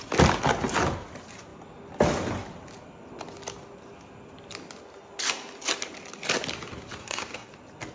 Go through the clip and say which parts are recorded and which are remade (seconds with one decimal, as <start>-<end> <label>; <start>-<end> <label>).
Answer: 0.0-7.0 recorded; 7.0-7.5 remade; 7.5-7.9 recorded